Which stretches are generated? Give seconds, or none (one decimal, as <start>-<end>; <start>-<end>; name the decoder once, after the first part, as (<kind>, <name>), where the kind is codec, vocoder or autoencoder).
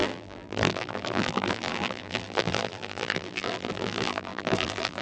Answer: 0.0-5.0 (vocoder, BigVGAN v2)